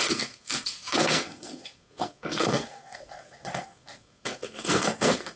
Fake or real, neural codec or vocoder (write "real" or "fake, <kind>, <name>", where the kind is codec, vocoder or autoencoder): fake, codec, SNAC